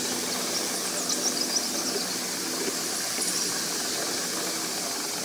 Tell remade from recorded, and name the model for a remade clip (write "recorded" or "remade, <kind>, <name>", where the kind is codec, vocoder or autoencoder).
recorded